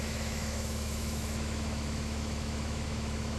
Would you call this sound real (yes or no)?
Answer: no